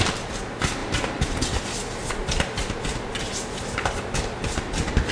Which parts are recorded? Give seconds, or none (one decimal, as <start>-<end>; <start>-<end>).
0.0-5.1